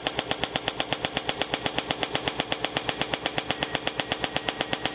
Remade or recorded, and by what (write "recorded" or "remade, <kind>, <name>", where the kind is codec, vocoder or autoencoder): recorded